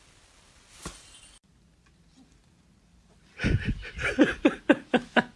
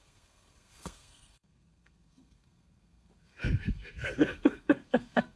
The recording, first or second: first